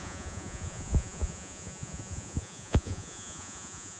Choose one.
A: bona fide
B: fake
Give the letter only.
B